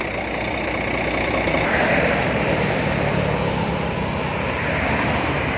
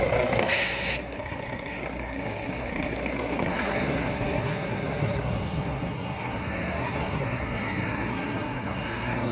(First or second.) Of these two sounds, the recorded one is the first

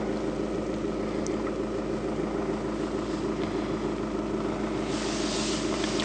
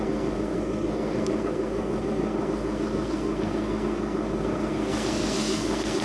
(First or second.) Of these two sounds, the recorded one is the first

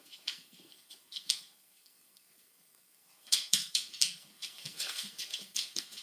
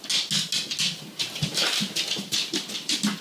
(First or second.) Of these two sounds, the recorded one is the second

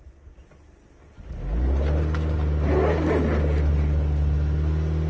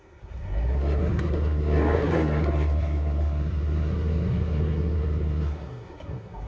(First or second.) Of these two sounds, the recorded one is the first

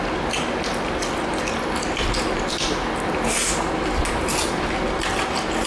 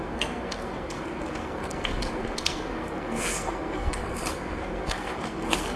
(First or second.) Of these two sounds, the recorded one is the first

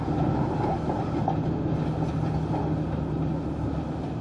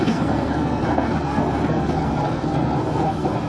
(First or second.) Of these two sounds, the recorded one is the first